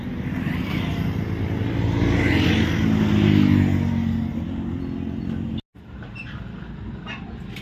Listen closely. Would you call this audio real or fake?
real